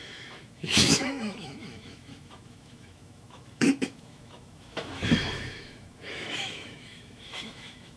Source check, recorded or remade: remade